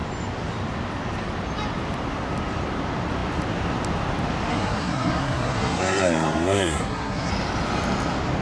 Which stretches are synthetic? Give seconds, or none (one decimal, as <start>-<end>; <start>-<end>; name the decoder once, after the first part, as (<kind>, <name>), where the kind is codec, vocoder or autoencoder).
4.5-7.3 (codec, SNAC)